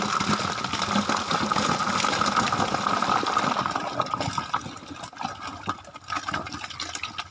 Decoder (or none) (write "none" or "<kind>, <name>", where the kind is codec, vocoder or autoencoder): none